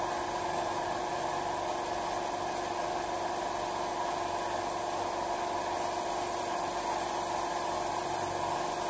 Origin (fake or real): real